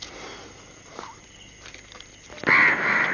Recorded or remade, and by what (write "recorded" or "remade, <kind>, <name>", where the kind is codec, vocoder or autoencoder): recorded